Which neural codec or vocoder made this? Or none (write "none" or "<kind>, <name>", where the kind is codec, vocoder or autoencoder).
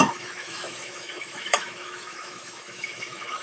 autoencoder, DAC-VAE